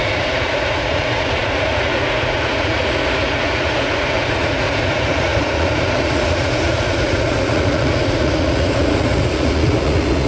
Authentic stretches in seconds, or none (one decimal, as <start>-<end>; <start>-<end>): none